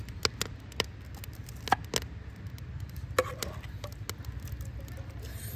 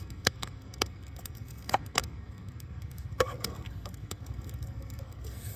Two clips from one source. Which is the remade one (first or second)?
second